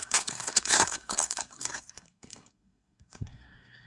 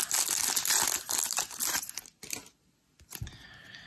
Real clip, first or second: second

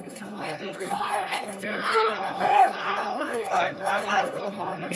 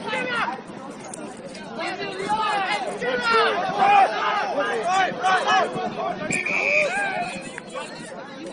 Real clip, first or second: second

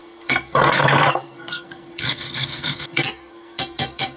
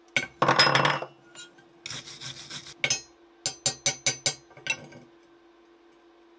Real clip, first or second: second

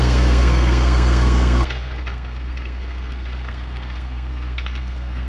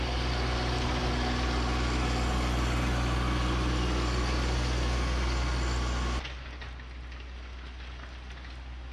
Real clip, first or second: second